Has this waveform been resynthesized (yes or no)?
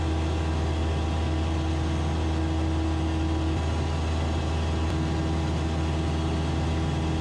no